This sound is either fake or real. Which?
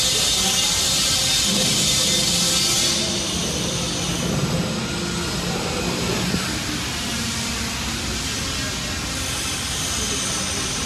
real